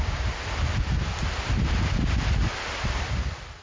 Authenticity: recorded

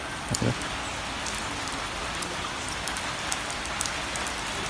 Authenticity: recorded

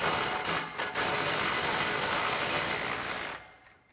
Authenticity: recorded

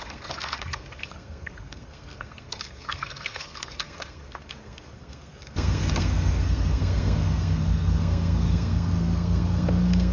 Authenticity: remade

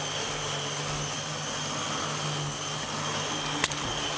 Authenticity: recorded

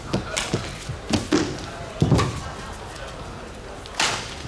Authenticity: recorded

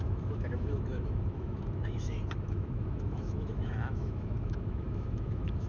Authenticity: remade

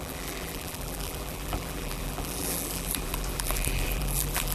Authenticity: remade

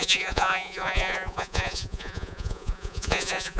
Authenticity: remade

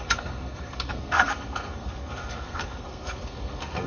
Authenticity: remade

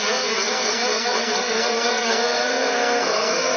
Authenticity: remade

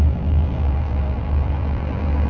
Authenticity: remade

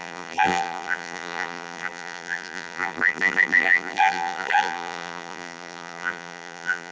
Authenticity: remade